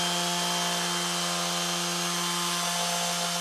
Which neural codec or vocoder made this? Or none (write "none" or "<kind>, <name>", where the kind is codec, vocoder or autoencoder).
none